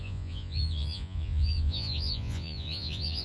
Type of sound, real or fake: fake